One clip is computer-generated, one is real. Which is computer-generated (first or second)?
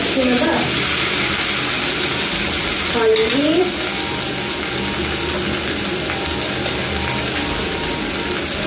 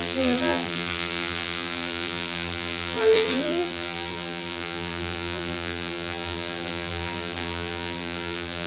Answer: second